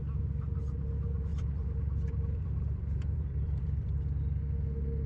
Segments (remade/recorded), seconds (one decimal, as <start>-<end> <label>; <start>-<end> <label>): 0.0-1.3 recorded; 1.3-4.4 remade; 4.4-5.1 recorded